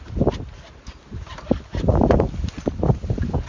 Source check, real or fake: real